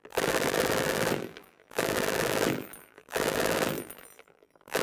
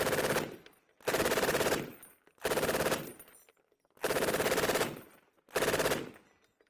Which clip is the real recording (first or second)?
second